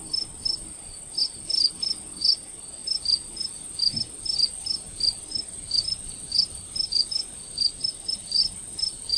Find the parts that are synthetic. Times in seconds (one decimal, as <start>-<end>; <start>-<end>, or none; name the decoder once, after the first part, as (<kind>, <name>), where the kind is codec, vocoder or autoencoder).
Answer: none